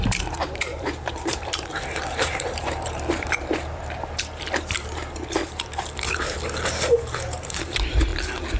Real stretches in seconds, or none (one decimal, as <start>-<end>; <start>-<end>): 5.4-6.1; 8.1-8.6